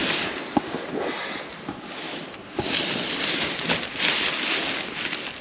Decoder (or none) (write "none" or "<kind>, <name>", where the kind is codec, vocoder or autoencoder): none